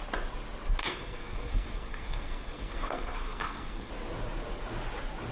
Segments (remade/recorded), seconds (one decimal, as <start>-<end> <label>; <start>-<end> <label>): 0.0-0.8 recorded; 0.8-3.9 remade; 3.9-5.3 recorded